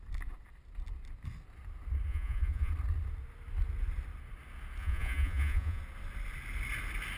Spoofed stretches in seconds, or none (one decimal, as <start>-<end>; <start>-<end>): 2.1-2.7; 4.8-5.8